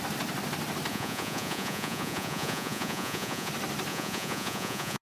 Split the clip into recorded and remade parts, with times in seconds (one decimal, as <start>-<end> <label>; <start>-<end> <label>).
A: 0.0-0.9 recorded; 0.9-3.5 remade; 3.5-3.9 recorded; 3.9-5.0 remade